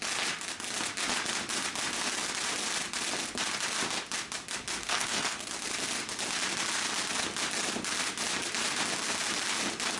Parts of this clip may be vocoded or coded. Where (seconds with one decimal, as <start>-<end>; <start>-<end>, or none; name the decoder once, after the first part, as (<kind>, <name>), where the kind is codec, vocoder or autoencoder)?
4.8-5.5 (codec, SNAC)